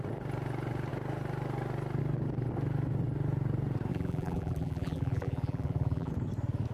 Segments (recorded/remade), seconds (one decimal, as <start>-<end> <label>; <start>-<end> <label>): 0.0-3.9 recorded; 3.9-6.1 remade; 6.1-6.7 recorded